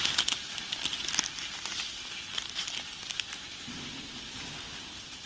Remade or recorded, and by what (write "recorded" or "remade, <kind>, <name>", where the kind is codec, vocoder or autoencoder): recorded